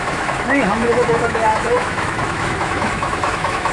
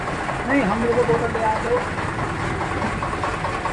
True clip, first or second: second